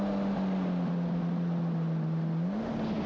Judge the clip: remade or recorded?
recorded